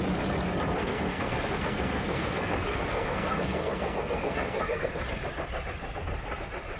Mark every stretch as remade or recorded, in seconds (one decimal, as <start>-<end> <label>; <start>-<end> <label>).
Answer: 0.0-0.8 recorded; 0.8-4.9 remade; 4.9-6.8 recorded